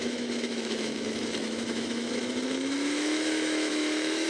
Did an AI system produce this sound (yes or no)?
yes